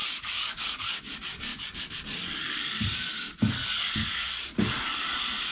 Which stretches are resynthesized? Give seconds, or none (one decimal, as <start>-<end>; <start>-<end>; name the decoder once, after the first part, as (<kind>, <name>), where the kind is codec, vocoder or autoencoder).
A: 0.0-1.0 (codec, DAC); 1.5-4.3